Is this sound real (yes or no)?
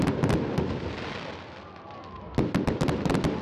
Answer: yes